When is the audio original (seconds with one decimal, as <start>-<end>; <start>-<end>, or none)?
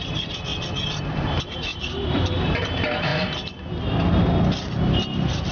0.5-1.0; 3.1-4.8